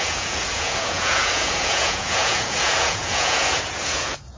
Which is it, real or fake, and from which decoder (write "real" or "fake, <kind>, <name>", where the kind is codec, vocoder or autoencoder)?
fake, vocoder, Vocos